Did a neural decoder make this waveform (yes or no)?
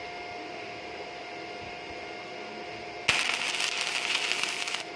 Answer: no